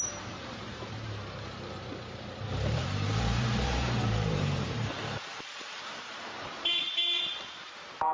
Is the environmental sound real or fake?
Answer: fake